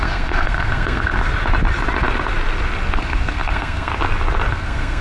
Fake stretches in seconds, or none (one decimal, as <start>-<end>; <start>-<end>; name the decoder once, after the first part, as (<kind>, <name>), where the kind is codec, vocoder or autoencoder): 0.0-1.2 (codec, SNAC); 3.0-3.9; 4.5-5.0